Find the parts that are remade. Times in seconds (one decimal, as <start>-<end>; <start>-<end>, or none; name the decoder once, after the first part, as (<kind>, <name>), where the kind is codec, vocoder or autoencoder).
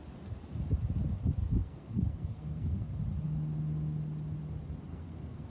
1.4-3.0 (codec, SNAC); 4.9-5.5